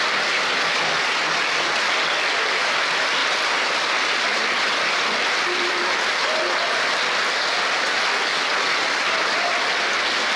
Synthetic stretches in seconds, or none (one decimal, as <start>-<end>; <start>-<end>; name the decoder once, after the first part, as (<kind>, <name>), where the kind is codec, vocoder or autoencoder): none